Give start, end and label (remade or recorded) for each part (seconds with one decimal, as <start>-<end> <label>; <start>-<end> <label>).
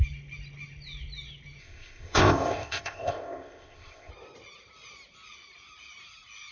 0.0-1.6 recorded; 1.6-4.1 remade; 4.1-6.5 recorded